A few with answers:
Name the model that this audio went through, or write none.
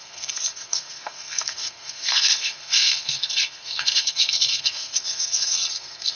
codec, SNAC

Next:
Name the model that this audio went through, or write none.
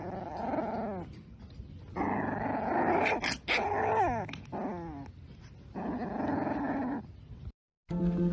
none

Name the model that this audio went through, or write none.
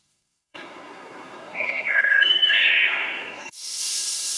codec, SNAC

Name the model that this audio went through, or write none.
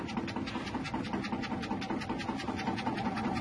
none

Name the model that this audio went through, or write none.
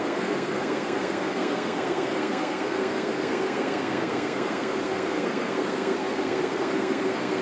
codec, SNAC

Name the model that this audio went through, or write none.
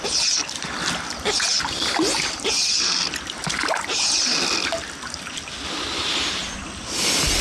none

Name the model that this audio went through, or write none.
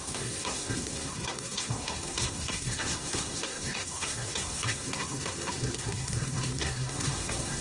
codec, SNAC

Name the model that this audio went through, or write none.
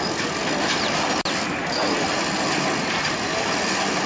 none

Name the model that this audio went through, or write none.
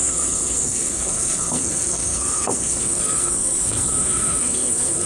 codec, SNAC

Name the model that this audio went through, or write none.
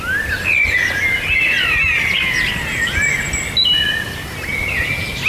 none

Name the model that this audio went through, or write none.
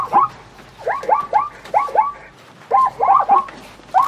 none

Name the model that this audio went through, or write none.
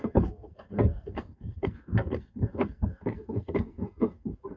codec, SNAC